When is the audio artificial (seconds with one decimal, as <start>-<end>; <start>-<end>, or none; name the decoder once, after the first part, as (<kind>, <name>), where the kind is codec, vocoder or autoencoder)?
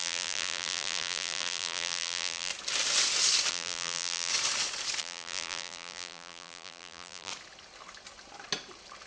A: 0.0-2.5 (vocoder, BigVGAN v2); 3.5-4.3; 5.0-7.3